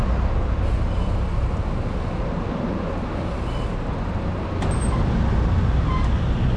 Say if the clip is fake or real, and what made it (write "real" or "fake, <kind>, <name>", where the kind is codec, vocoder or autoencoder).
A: real